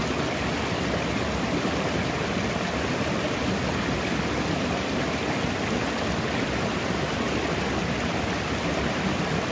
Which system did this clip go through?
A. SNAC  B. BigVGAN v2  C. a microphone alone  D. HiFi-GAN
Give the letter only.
C